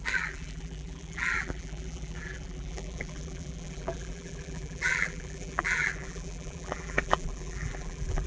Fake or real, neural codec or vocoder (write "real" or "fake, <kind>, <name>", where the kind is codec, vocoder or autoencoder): fake, vocoder, BigVGAN v2